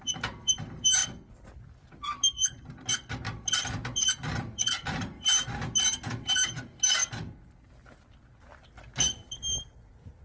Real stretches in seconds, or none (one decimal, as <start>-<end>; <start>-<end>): 0.0-1.0; 1.5-10.2